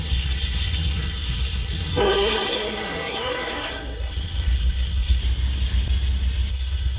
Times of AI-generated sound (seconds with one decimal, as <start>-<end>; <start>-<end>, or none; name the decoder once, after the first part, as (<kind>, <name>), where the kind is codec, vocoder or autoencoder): 0.0-5.2 (codec, SNAC); 6.5-7.0